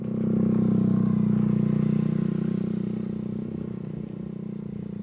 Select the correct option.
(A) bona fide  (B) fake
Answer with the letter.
A